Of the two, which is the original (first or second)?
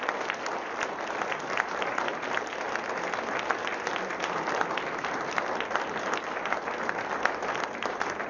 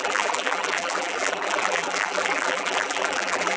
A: first